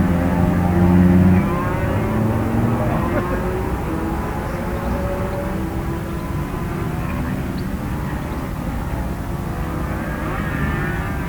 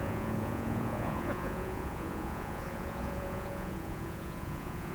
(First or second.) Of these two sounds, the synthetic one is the second